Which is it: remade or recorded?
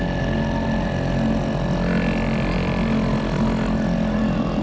recorded